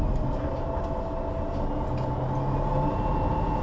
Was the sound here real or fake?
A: real